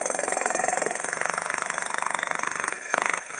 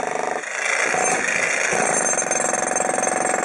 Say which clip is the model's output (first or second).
first